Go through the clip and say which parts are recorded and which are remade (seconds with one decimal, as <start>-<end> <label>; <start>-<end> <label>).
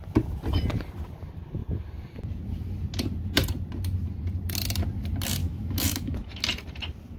0.0-5.4 recorded; 5.4-6.3 remade; 6.3-7.2 recorded